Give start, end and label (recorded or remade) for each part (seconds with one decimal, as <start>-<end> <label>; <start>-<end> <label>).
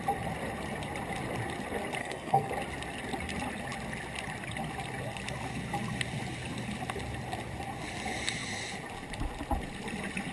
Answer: 0.0-2.0 recorded; 2.0-2.5 remade; 2.5-10.3 recorded